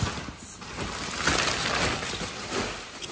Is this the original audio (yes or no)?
yes